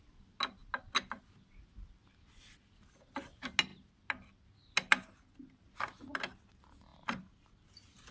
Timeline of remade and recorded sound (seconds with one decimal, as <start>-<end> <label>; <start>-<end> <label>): 0.0-8.1 recorded